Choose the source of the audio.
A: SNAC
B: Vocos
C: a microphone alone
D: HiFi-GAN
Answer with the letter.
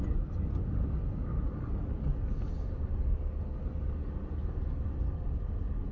C